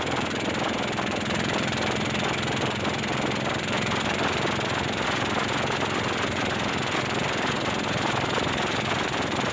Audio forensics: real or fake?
real